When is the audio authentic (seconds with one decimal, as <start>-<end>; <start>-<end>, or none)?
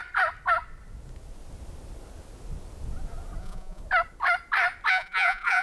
0.0-3.4; 3.8-4.9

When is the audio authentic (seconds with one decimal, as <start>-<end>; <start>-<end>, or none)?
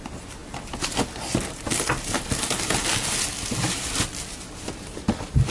0.0-5.5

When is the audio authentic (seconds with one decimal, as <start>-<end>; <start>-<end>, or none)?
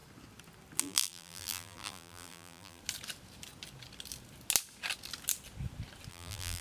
0.0-0.8; 2.8-6.1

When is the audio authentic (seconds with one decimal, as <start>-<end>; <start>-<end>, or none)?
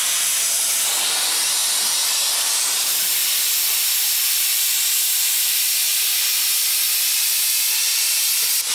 0.0-1.6; 4.7-8.7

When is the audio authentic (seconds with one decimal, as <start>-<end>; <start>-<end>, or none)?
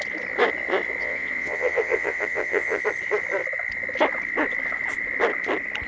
0.0-1.0; 2.8-5.9